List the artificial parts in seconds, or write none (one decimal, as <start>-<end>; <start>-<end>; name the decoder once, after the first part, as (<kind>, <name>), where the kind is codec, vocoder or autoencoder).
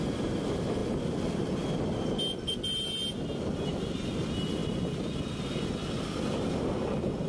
none